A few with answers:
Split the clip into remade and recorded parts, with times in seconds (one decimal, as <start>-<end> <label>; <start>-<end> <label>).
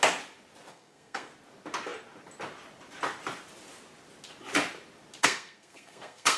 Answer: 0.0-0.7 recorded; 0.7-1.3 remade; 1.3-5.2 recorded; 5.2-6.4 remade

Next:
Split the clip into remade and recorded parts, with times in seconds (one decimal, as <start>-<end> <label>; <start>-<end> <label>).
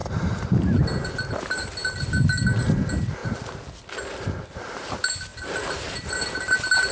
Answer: 0.0-0.8 remade; 0.8-6.9 recorded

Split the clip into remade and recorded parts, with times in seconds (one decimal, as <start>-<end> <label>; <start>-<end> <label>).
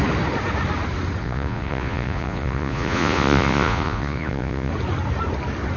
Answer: 0.0-1.2 recorded; 1.2-4.7 remade; 4.7-5.8 recorded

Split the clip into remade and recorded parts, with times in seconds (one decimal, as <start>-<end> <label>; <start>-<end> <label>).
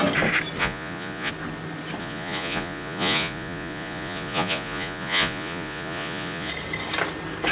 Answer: 0.0-0.6 recorded; 0.6-1.3 remade; 1.3-2.0 recorded; 2.0-6.5 remade; 6.5-7.5 recorded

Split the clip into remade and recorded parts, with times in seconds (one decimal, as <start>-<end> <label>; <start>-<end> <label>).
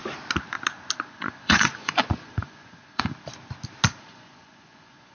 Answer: 0.0-1.1 recorded; 1.1-3.1 remade; 3.1-4.0 recorded; 4.0-5.1 remade